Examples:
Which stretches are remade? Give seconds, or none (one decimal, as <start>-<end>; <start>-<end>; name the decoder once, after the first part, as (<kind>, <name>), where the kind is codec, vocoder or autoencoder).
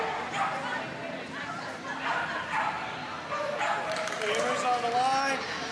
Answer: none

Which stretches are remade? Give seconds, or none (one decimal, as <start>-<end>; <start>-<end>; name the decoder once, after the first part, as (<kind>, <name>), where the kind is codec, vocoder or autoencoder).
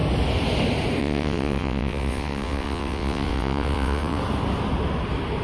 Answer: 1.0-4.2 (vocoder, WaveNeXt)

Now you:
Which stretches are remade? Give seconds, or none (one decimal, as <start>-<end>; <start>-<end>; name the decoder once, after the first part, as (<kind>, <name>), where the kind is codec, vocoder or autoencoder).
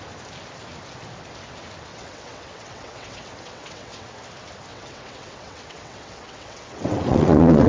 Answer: 1.9-4.1 (vocoder, WaveNeXt); 4.7-7.7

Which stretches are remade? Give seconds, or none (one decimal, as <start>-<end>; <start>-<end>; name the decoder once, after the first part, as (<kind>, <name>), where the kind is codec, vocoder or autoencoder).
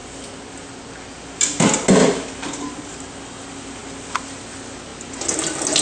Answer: none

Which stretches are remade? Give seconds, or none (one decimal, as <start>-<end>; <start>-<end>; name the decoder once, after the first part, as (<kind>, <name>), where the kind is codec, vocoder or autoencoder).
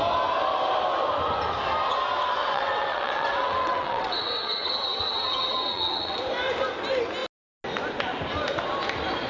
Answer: 2.4-6.2 (vocoder, WaveNeXt)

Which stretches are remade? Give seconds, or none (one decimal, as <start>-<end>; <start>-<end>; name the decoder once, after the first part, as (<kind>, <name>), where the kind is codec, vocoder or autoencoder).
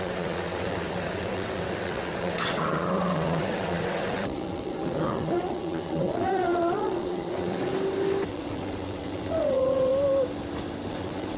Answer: 0.0-7.7 (vocoder, WaveNeXt); 8.3-9.9; 10.9-11.4